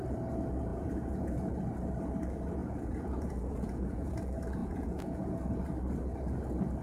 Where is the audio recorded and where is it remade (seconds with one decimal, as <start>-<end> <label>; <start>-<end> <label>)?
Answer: 0.0-0.7 recorded; 0.7-1.5 remade; 1.5-2.6 recorded; 2.6-4.1 remade; 4.1-4.6 recorded; 4.6-5.4 remade; 5.4-6.8 recorded